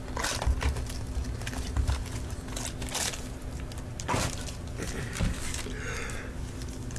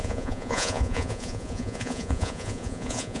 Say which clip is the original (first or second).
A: first